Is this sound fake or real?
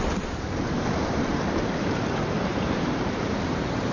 fake